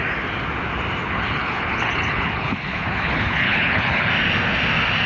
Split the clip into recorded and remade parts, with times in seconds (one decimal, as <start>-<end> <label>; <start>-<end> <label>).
0.0-1.0 recorded; 1.0-4.1 remade; 4.1-5.1 recorded